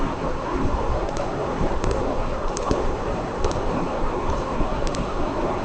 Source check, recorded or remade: remade